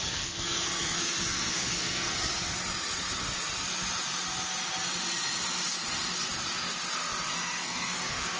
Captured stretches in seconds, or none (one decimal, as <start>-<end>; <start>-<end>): 2.3-7.3